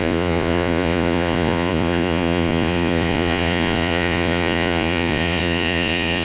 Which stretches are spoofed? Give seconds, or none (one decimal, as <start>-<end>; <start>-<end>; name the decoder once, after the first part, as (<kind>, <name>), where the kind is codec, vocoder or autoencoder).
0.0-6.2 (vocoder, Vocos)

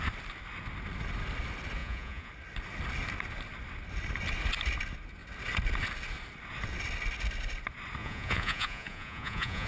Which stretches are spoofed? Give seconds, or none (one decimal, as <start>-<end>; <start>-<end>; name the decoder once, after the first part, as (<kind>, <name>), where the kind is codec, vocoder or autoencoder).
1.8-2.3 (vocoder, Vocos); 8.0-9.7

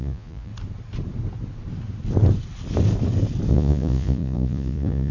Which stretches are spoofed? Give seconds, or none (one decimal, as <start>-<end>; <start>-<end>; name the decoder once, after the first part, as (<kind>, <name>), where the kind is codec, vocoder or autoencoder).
0.0-0.5 (vocoder, Vocos); 3.5-5.1

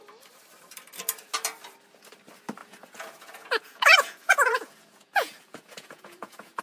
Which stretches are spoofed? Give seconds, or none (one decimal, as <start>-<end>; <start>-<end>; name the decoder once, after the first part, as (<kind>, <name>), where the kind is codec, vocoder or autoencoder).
2.6-6.6 (vocoder, Vocos)

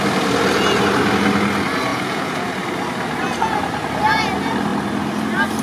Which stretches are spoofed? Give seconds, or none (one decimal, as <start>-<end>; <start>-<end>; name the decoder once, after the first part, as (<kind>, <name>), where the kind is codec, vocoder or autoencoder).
1.9-2.5 (vocoder, Vocos)

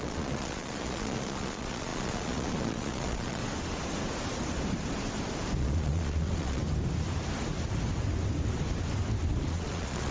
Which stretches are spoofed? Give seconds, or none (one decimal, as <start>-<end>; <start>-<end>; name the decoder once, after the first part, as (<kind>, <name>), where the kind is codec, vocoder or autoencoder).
0.0-3.4 (vocoder, Vocos); 5.6-6.6; 9.4-10.1

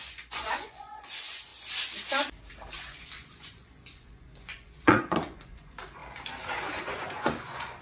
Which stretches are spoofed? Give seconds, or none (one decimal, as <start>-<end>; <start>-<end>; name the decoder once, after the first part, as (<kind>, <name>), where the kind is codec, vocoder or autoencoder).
0.0-1.5 (vocoder, Vocos); 2.7-6.0; 6.8-7.8